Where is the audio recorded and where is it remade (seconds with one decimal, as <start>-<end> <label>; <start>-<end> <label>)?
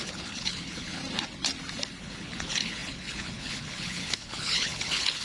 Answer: 0.0-1.0 remade; 1.0-2.0 recorded; 2.0-5.2 remade